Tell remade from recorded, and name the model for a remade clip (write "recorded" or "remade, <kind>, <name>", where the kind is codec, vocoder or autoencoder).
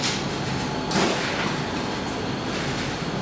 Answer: recorded